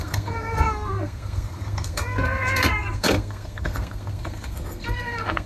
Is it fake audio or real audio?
fake